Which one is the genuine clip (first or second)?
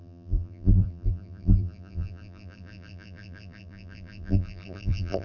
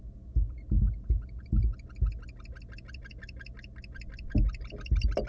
second